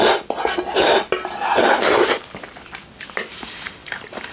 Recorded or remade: recorded